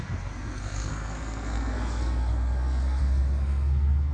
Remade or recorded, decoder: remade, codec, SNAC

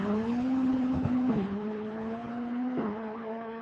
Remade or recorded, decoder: remade, codec, HILCodec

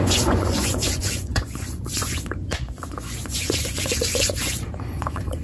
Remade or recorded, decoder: remade, vocoder, Vocos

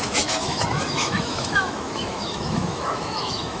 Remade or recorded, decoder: remade, autoencoder, DAC-VAE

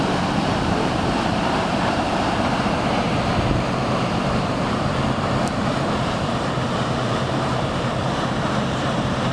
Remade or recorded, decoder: remade, vocoder, BigVGAN v2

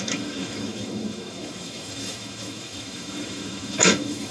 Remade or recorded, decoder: remade, autoencoder, DAC-VAE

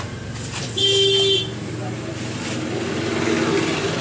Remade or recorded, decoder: recorded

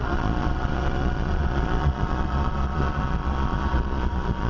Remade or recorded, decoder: remade, vocoder, Vocos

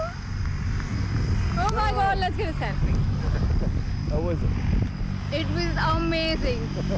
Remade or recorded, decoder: recorded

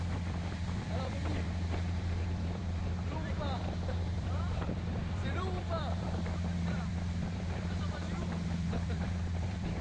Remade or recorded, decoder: remade, vocoder, BigVGAN v2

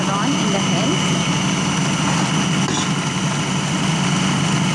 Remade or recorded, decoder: recorded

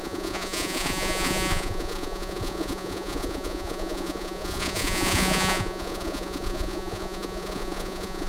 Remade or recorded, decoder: remade, vocoder, Vocos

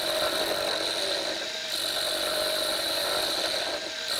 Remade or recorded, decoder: recorded